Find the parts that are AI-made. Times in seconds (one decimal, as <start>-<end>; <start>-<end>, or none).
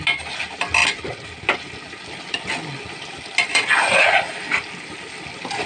none